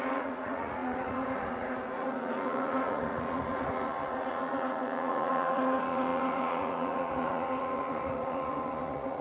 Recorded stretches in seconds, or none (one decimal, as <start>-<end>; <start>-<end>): none